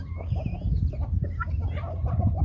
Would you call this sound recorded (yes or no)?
yes